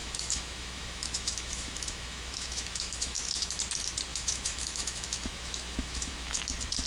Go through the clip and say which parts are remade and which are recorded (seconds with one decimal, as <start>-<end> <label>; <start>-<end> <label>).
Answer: 0.0-3.6 remade; 3.6-4.1 recorded; 4.1-6.4 remade; 6.4-6.9 recorded